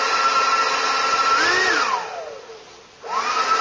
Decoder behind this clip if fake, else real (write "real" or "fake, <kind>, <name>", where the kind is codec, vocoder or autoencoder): real